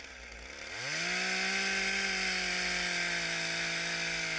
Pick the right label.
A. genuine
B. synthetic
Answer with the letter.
A